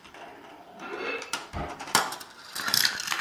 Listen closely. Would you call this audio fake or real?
fake